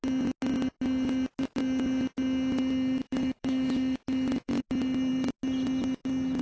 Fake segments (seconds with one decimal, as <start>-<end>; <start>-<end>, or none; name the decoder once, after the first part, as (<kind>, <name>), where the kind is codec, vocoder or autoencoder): 3.0-4.6 (autoencoder, DAC-VAE)